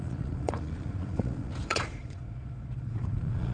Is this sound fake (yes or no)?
yes